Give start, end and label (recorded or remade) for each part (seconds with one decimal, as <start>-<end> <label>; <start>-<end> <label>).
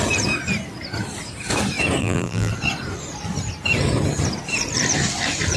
0.0-2.0 recorded; 2.0-2.5 remade; 2.5-5.6 recorded